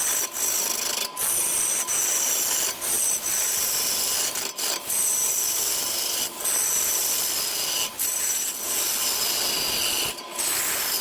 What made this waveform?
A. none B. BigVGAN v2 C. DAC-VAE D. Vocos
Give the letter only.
A